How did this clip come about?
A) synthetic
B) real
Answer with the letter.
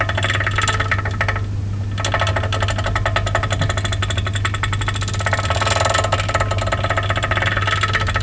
B